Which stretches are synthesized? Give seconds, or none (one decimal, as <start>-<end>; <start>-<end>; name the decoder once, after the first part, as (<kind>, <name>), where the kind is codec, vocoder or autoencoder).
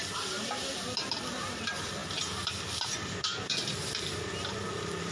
none